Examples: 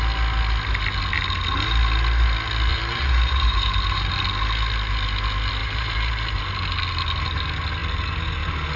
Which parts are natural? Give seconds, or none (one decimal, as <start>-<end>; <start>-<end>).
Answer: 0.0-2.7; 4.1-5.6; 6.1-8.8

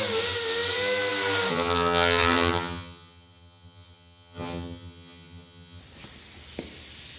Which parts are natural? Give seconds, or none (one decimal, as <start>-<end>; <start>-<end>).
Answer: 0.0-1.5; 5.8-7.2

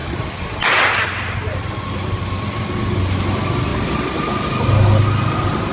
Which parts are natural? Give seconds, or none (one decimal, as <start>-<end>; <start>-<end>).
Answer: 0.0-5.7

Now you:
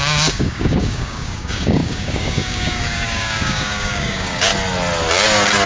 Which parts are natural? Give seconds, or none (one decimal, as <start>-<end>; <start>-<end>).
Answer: 4.5-5.7